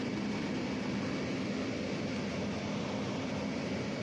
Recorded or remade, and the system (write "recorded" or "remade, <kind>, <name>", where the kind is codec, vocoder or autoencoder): recorded